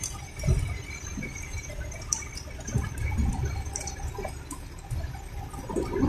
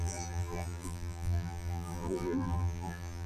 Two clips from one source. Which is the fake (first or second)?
second